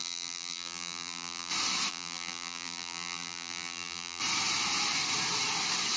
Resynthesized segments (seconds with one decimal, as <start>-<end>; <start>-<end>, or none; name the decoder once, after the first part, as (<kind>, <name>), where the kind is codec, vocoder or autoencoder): 0.0-1.5 (vocoder, BigVGAN v2); 1.9-4.2